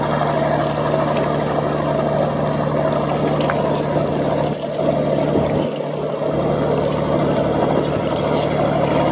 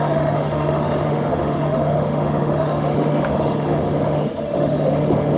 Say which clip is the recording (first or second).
first